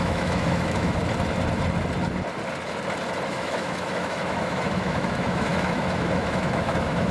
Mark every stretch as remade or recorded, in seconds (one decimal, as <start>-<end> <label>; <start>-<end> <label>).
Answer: 0.0-1.0 remade; 1.0-3.3 recorded; 3.3-7.1 remade